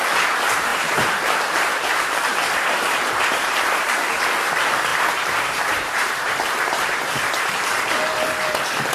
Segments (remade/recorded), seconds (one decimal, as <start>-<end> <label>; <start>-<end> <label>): 0.0-0.7 recorded; 0.7-3.6 remade; 3.6-4.9 recorded; 4.9-7.9 remade; 7.9-8.9 recorded